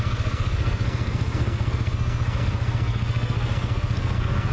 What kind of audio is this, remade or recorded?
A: remade